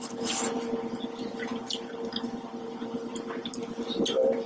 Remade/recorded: recorded